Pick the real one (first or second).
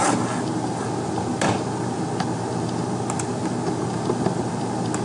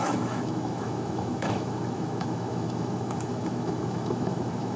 first